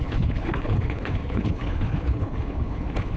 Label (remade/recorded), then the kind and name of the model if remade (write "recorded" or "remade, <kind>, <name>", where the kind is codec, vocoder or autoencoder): remade, codec, HILCodec